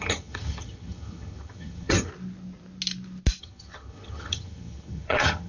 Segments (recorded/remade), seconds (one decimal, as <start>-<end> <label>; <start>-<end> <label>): 0.0-2.1 remade; 2.1-3.4 recorded; 3.4-5.5 remade